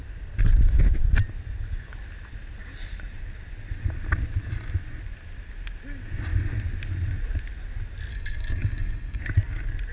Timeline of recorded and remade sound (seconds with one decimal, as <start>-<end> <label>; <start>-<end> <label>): 0.0-8.1 recorded; 8.1-9.2 remade; 9.2-9.9 recorded